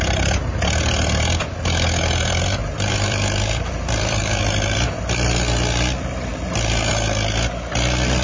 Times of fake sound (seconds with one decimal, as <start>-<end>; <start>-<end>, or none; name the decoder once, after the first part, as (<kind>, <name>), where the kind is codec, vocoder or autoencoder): 2.6-5.0 (vocoder, BigVGAN v2); 6.3-6.9